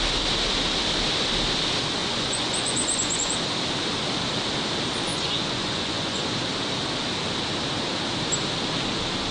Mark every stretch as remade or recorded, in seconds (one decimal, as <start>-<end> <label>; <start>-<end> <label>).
0.0-2.0 recorded; 2.0-3.3 remade; 3.3-5.1 recorded; 5.1-6.2 remade; 6.2-9.3 recorded